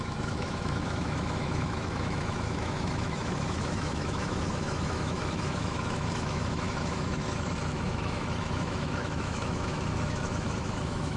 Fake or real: fake